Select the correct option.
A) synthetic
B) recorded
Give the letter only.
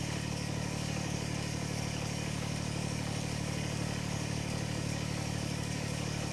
A